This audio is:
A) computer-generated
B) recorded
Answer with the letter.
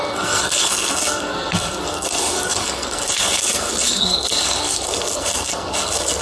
A